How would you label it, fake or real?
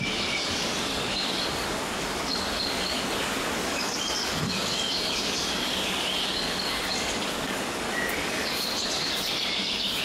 fake